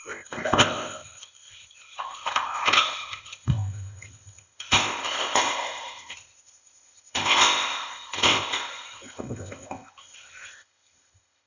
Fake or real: fake